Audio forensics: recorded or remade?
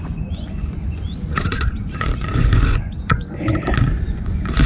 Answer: remade